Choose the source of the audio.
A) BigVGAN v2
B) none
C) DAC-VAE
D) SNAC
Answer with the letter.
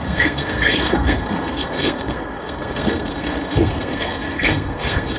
D